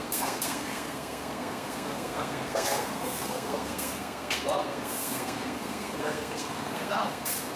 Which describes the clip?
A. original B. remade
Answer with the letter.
B